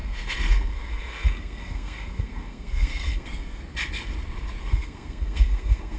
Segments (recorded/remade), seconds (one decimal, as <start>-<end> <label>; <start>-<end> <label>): 0.0-3.6 remade; 3.6-4.6 recorded; 4.6-6.0 remade